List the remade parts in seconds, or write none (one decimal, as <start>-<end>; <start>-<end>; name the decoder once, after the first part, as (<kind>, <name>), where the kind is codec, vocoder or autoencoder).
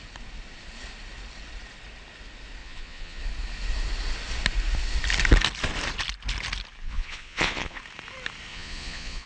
2.6-3.2 (vocoder, Vocos); 6.8-7.8; 8.5-9.3